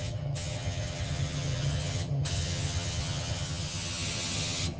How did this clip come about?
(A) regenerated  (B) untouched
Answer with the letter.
A